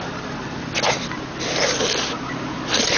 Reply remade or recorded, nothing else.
recorded